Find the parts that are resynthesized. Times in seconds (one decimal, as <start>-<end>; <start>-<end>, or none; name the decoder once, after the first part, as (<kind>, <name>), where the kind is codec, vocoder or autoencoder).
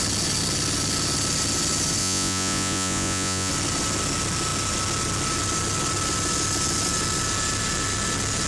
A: 2.0-3.5 (vocoder, Vocos)